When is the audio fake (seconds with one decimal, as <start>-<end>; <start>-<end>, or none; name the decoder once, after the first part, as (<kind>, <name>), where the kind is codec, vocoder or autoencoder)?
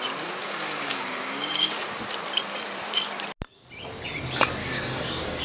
0.4-1.8 (codec, DAC); 4.6-5.4